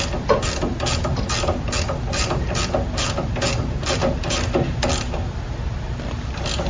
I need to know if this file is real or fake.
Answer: fake